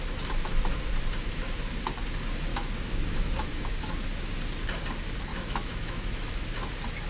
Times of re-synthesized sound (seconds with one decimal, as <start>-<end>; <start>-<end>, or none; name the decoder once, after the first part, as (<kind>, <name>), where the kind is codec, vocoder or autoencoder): 2.5-3.9 (autoencoder, DAC-VAE); 5.3-6.3